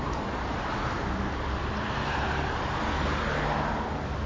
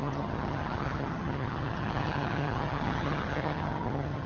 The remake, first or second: second